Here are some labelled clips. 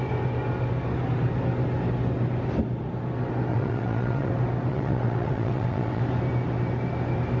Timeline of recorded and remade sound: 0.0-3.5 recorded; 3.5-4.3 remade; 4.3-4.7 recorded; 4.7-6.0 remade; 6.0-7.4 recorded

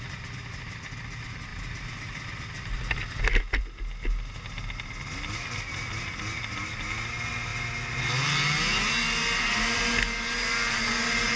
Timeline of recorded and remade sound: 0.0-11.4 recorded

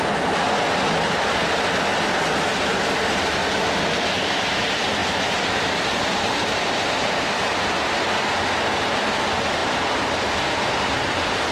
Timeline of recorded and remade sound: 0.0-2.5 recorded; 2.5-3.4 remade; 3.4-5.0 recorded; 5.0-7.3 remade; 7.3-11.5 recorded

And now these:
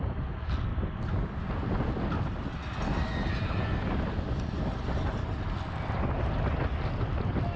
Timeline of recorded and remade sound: 0.0-7.6 recorded

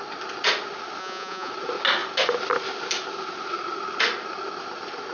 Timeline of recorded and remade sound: 0.0-1.0 recorded; 1.0-1.5 remade; 1.5-5.1 recorded

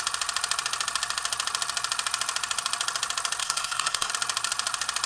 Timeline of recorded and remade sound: 0.0-3.4 recorded; 3.4-4.1 remade; 4.1-5.1 recorded

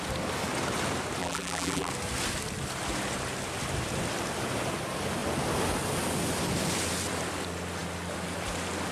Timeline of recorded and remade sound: 0.0-1.2 recorded; 1.2-1.9 remade; 1.9-8.9 recorded